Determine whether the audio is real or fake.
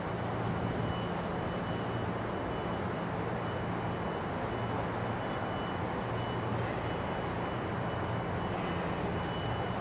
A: real